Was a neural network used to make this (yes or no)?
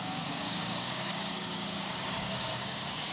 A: yes